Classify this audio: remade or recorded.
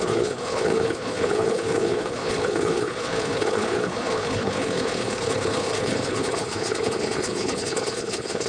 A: remade